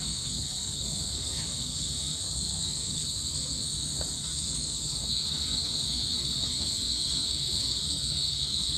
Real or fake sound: fake